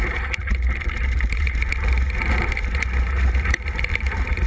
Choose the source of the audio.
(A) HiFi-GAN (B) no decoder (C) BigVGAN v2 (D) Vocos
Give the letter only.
C